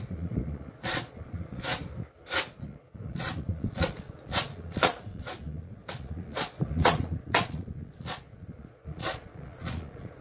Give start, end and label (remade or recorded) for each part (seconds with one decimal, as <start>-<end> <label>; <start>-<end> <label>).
0.0-1.8 remade; 1.8-2.5 recorded; 2.5-10.2 remade